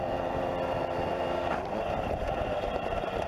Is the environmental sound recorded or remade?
remade